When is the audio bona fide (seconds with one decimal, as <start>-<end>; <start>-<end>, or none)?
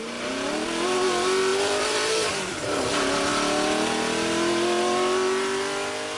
0.0-1.5; 2.6-6.2